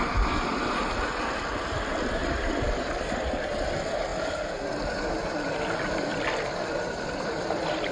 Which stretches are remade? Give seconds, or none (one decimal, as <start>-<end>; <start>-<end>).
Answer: 2.2-3.0; 6.1-7.9